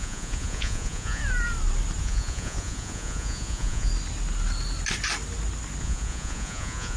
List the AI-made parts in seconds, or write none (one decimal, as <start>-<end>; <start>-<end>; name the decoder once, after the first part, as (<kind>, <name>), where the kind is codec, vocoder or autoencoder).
0.0-1.2 (vocoder, Vocos); 2.0-3.9; 5.8-7.0